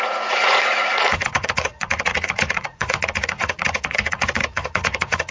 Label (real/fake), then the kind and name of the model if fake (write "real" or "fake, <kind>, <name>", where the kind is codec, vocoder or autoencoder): fake, vocoder, Vocos